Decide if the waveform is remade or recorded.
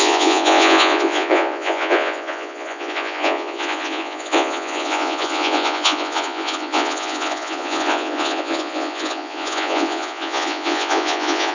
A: remade